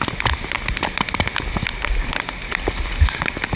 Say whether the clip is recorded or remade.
recorded